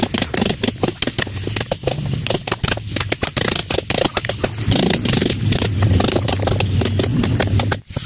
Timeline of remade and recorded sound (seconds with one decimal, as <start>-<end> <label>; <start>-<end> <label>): 0.0-8.1 recorded